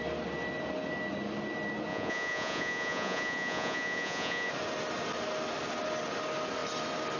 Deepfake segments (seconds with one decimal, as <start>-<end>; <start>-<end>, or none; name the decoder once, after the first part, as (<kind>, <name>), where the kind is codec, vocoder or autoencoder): 1.9-4.5 (vocoder, Vocos)